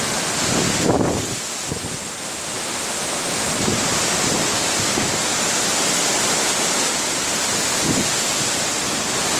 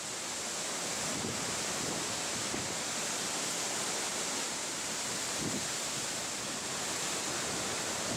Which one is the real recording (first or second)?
first